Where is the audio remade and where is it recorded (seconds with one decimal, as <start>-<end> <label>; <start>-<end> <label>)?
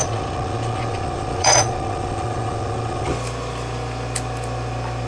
0.0-3.1 remade; 3.1-5.1 recorded